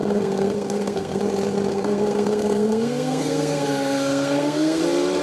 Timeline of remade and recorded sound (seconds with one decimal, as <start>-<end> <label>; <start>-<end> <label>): 0.0-1.2 remade; 1.2-1.7 recorded; 1.7-4.8 remade; 4.8-5.2 recorded